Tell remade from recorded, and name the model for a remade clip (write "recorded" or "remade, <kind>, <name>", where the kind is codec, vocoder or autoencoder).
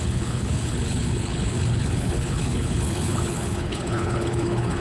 remade, codec, HILCodec